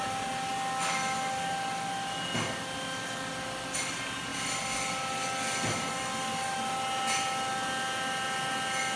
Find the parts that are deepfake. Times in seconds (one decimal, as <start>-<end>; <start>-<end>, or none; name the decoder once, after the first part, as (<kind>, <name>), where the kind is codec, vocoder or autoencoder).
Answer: none